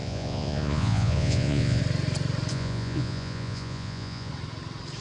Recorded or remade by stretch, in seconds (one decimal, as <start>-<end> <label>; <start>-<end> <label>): 0.0-1.8 remade; 1.8-2.5 recorded; 2.5-4.3 remade; 4.3-5.0 recorded